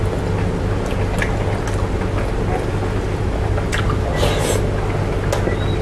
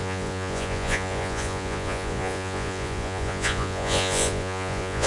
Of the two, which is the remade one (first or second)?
second